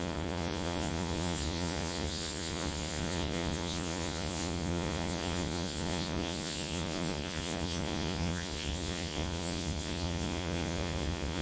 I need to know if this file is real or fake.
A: fake